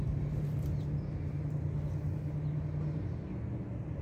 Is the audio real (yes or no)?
yes